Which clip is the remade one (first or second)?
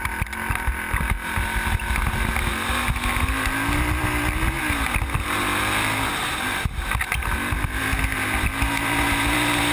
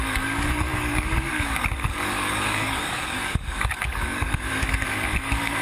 second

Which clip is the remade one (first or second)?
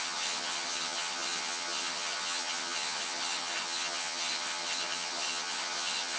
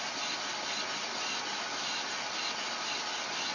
first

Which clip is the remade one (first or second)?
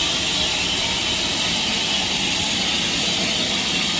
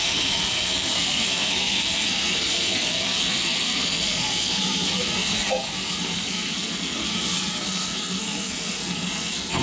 second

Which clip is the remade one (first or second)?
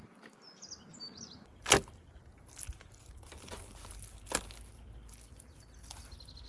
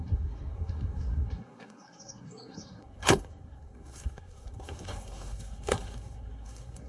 second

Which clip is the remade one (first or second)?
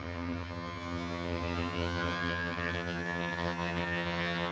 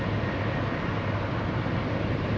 first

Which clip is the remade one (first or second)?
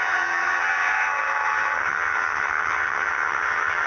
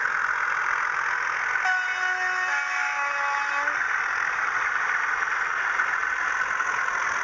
first